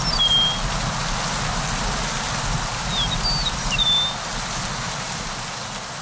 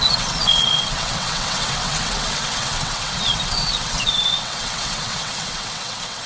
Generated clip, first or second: second